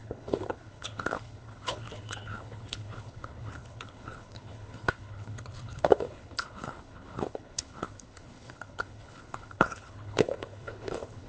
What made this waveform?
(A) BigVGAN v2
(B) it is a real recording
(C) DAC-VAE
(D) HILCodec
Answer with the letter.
D